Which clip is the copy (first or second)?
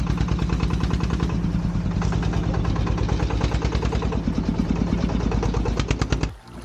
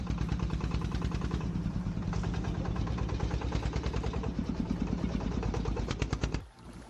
second